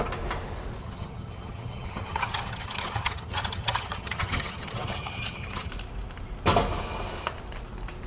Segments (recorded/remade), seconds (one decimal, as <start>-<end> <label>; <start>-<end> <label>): 0.0-0.8 recorded; 0.8-5.7 remade; 5.7-8.1 recorded

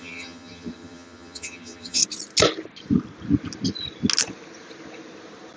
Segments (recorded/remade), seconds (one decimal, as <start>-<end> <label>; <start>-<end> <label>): 0.0-2.0 remade; 2.0-5.6 recorded

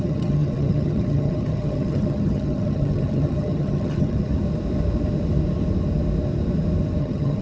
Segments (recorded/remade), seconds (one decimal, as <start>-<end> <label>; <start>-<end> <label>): 0.0-4.3 remade; 4.3-7.0 recorded; 7.0-7.4 remade

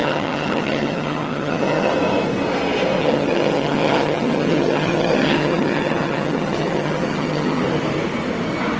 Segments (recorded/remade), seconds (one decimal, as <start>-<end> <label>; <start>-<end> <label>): 0.0-1.9 remade; 1.9-3.0 recorded; 3.0-7.6 remade; 7.6-8.8 recorded

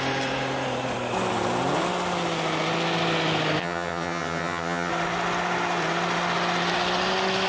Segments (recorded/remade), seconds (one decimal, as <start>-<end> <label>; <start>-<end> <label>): 0.0-3.6 recorded; 3.6-4.9 remade; 4.9-7.5 recorded

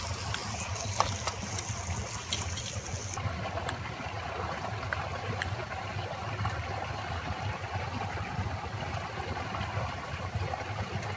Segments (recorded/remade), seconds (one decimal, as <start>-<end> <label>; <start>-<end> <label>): 0.0-11.2 recorded